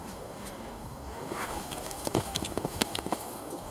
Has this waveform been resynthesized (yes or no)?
yes